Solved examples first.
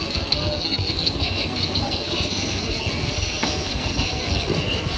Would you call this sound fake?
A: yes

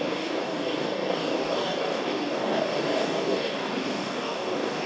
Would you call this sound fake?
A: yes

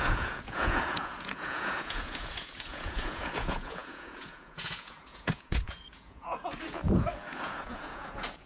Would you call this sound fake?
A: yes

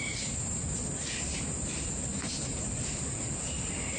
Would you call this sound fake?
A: no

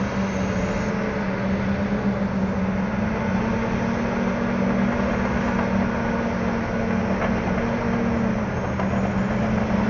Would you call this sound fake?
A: no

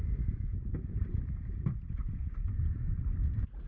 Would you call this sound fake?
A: yes